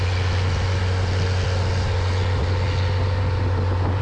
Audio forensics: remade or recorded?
recorded